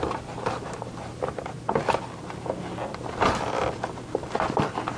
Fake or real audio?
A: real